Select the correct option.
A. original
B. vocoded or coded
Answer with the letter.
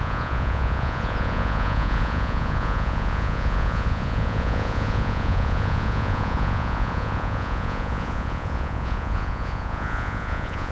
B